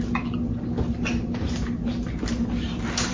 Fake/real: real